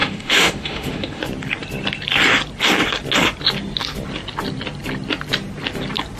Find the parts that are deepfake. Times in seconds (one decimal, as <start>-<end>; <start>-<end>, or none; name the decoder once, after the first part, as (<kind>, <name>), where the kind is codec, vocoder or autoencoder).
0.0-1.2 (autoencoder, DAC-VAE)